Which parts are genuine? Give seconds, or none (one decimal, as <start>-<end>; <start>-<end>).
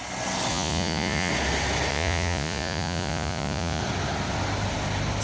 0.0-0.5; 1.3-1.9; 3.8-5.2